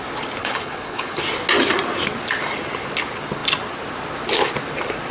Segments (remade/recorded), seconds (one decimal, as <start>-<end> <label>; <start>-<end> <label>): 0.0-0.4 recorded; 0.4-1.2 remade; 1.2-5.1 recorded